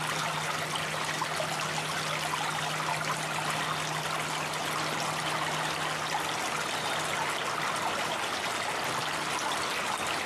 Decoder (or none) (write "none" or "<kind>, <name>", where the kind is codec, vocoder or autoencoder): none